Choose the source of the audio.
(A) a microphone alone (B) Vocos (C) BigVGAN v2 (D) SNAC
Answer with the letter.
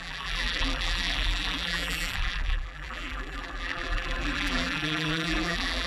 C